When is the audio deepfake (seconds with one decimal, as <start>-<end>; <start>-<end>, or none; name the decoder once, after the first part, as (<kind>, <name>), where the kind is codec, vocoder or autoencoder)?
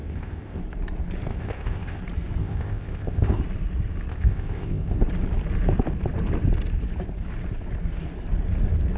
0.0-0.6 (codec, ZipCodec); 1.3-2.0; 2.4-3.4; 4.1-5.0